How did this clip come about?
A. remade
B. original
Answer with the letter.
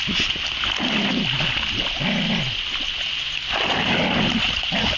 B